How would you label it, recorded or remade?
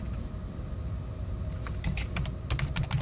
recorded